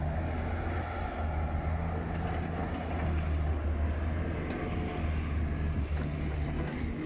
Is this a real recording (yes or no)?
yes